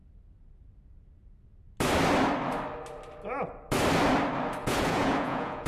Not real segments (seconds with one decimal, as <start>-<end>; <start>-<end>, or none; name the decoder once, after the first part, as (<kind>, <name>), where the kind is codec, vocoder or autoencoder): 4.6-5.7 (vocoder, Vocos)